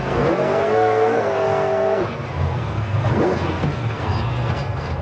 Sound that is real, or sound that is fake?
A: fake